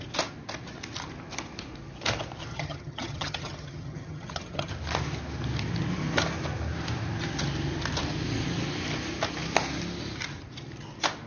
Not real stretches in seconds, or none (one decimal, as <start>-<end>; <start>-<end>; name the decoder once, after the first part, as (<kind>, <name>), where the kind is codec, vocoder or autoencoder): 2.5-4.7 (vocoder, HiFi-GAN)